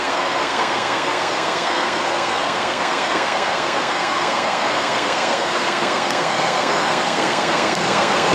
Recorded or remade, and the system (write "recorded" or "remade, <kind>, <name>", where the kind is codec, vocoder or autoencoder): remade, codec, SNAC